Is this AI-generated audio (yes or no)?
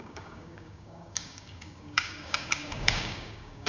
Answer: yes